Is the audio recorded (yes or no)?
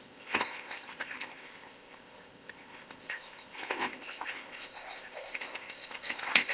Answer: no